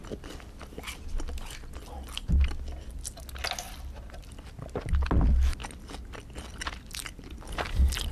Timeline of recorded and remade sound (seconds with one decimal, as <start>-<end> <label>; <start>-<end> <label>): 0.0-8.1 recorded